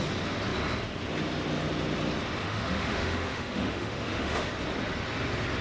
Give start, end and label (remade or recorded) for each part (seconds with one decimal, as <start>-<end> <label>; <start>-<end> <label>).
0.0-2.4 recorded; 2.4-4.5 remade; 4.5-5.6 recorded